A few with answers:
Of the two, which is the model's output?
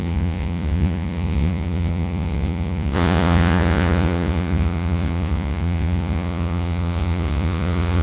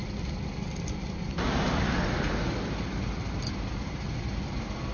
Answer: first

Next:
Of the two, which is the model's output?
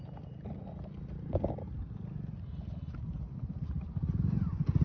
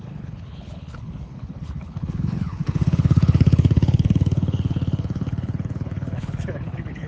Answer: second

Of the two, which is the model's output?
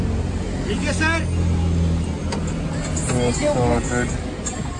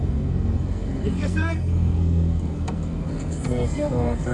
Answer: second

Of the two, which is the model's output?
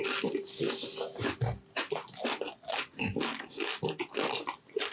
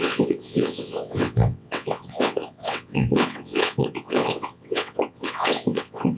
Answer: second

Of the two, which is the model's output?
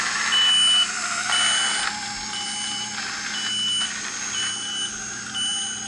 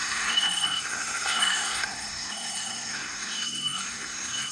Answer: second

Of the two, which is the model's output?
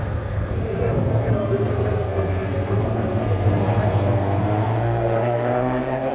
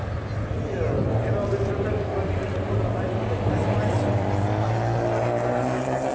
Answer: first